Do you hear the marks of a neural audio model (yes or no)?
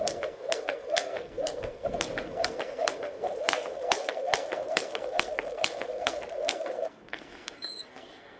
yes